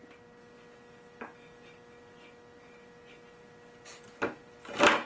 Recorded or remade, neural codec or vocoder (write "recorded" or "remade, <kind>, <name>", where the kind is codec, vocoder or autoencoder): recorded